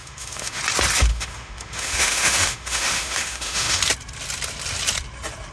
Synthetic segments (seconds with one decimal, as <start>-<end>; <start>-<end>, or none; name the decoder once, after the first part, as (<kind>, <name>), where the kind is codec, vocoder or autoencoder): 0.0-0.6 (autoencoder, DAC-VAE); 1.1-3.8